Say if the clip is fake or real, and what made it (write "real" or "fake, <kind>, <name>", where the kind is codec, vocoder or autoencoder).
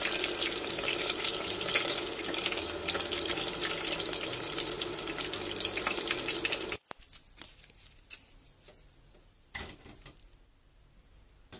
real